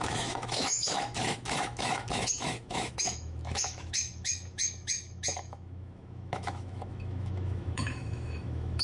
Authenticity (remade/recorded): remade